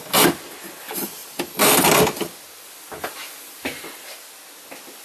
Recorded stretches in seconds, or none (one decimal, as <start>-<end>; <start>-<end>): 0.0-5.0